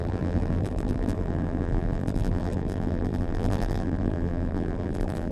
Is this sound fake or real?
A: fake